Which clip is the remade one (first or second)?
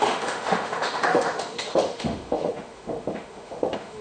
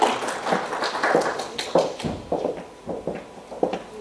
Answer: first